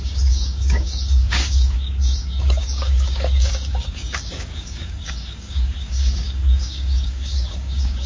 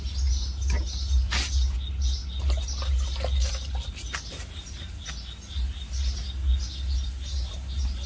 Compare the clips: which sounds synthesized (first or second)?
first